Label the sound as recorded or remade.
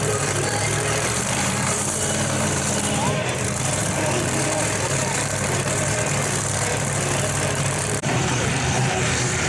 remade